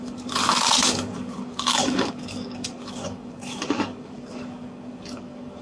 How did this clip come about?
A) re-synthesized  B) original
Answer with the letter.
A